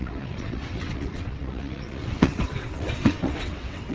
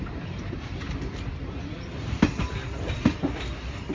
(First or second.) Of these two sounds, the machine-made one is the first